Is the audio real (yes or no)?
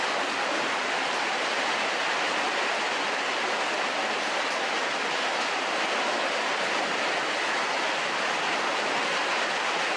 yes